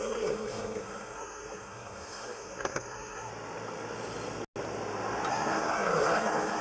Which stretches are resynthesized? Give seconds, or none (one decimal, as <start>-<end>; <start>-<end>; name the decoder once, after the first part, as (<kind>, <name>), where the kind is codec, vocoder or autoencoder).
0.0-3.3 (codec, SNAC); 5.3-6.6